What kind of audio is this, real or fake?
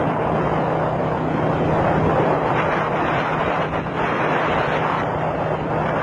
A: real